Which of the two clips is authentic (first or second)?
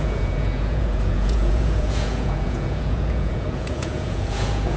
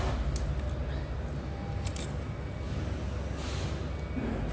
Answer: second